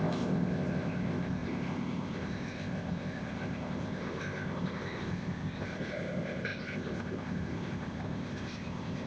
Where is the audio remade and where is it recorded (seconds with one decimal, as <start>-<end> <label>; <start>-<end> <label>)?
0.0-9.1 remade